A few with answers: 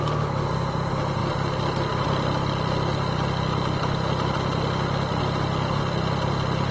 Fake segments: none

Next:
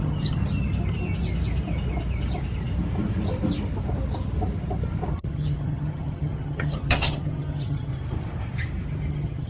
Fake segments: 0.0-0.4 (vocoder, HiFi-GAN); 5.1-7.9; 9.1-9.5

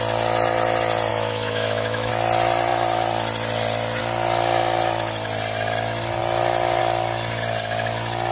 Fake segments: 1.1-2.1 (autoencoder, DAC-VAE)

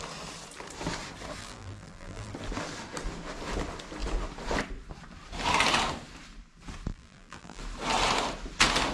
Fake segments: 1.4-2.3 (vocoder, BigVGAN v2); 6.9-7.6

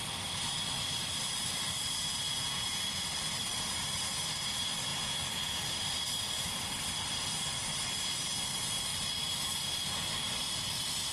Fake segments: 2.1-3.1 (vocoder, Vocos); 4.9-5.6